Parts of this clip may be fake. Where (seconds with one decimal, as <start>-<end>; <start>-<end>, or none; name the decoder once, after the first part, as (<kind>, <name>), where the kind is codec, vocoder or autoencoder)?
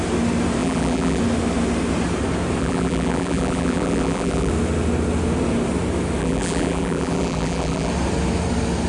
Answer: 0.6-1.2 (vocoder, BigVGAN v2); 2.6-4.5; 6.2-7.9